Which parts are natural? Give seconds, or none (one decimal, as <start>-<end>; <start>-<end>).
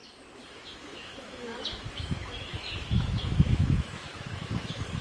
0.0-0.5